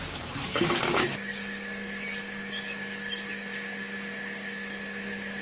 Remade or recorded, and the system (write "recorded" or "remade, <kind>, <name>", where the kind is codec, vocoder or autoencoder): remade, codec, DAC